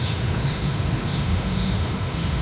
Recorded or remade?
remade